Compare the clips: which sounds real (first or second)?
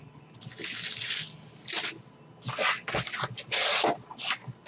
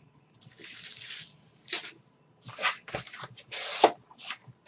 first